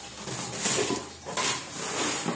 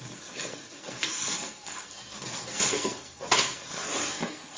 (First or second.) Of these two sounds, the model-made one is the second